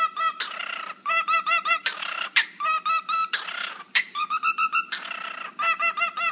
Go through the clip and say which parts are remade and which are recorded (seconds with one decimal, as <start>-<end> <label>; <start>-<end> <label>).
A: 0.0-3.2 remade; 3.2-3.7 recorded; 3.7-4.2 remade; 4.2-6.3 recorded